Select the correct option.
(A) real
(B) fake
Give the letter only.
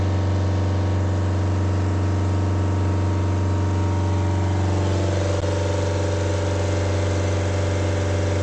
A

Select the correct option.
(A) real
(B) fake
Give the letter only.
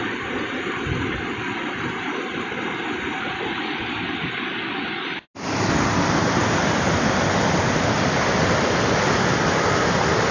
A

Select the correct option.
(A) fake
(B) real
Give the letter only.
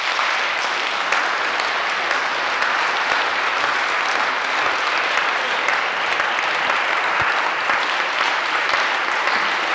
B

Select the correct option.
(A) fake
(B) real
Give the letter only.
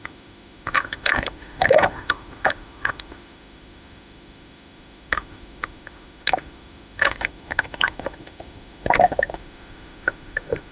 A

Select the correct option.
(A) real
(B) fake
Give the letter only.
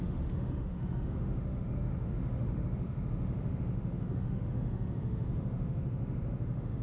B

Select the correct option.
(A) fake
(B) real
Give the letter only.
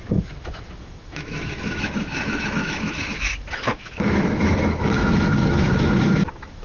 A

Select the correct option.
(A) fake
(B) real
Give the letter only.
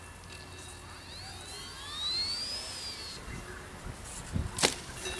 B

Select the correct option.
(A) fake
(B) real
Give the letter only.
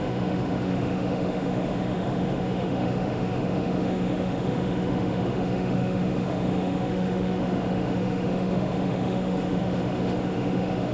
A